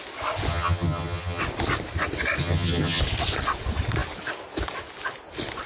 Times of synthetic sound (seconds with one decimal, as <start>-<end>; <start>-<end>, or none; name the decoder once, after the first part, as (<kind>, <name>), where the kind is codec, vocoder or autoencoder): 0.5-1.4 (vocoder, HiFi-GAN); 2.4-3.0